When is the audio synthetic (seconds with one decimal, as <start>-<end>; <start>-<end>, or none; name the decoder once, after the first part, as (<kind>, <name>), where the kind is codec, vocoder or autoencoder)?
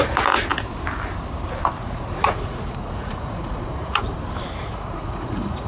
0.0-0.5 (vocoder, Vocos); 1.8-4.1; 4.6-5.7